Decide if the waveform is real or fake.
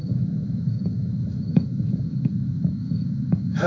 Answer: fake